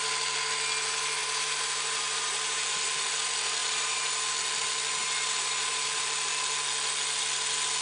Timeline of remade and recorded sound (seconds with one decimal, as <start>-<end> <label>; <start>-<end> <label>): 0.0-1.2 recorded; 1.2-2.8 remade; 2.8-3.6 recorded; 3.6-4.3 remade; 4.3-5.0 recorded; 5.0-6.3 remade; 6.3-7.8 recorded